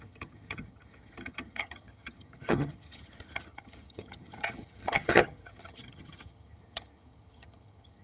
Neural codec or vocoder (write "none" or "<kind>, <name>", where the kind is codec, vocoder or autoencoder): vocoder, HiFi-GAN